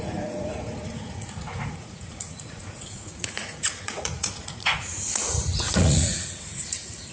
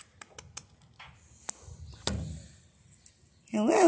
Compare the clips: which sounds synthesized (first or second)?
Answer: first